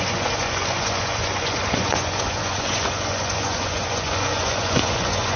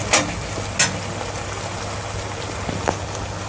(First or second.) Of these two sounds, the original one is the second